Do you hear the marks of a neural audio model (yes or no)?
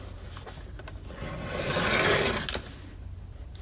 no